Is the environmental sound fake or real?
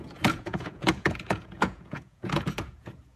fake